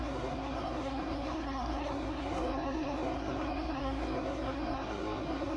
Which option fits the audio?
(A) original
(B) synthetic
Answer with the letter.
B